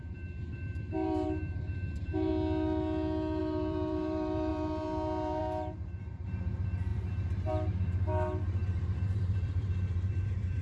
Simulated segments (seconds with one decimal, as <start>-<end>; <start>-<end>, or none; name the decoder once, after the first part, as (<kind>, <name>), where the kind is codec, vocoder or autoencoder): 0.0-2.3 (vocoder, BigVGAN v2); 3.4-10.6